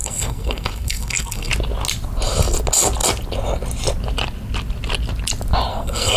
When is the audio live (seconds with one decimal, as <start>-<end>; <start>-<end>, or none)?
1.5-5.7